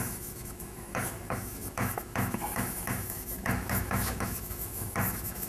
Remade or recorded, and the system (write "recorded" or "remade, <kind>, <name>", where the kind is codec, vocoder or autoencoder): remade, autoencoder, DAC-VAE